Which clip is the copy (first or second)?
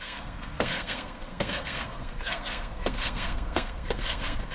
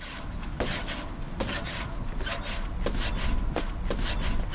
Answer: first